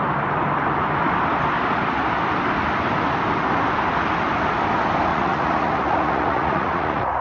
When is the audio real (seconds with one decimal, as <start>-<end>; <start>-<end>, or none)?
0.0-5.1